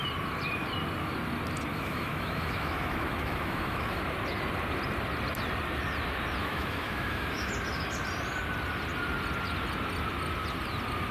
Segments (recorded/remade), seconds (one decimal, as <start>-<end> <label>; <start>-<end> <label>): 0.0-1.7 recorded; 1.7-4.0 remade; 4.0-6.4 recorded; 6.4-7.5 remade; 7.5-11.1 recorded